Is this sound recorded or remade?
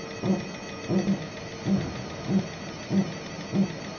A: recorded